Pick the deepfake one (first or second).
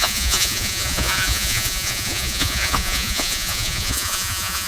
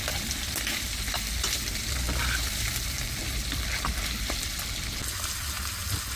first